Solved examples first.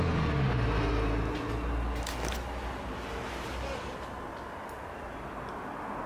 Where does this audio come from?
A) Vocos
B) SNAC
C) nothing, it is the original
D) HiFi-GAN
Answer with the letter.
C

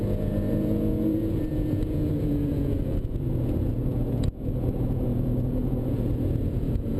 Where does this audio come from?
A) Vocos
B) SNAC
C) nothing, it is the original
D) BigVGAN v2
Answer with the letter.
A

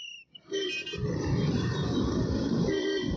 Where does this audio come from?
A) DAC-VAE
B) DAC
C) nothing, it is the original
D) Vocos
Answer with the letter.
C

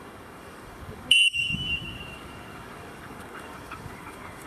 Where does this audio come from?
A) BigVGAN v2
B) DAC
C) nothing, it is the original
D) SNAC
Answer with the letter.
B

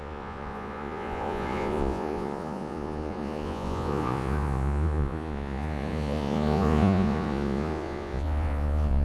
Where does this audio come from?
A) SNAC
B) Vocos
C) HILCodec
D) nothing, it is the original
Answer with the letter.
B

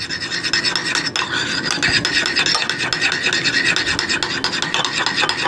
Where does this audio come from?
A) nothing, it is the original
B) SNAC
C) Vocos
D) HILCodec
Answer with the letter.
A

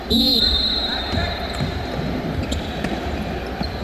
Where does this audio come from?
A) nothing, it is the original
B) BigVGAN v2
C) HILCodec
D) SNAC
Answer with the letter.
B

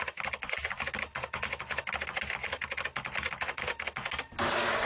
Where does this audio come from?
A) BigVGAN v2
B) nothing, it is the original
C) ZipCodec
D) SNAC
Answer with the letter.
B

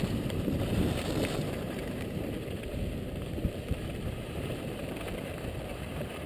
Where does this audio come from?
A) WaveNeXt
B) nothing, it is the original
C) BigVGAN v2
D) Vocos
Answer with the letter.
C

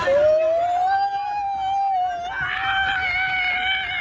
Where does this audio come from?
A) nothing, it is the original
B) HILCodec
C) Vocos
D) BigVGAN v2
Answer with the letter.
A